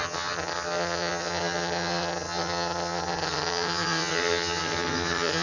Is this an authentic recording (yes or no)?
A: no